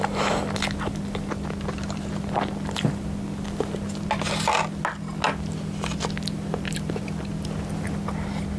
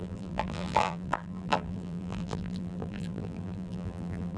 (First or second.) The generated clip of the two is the second